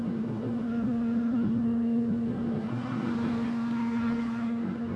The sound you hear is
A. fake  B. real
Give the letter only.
A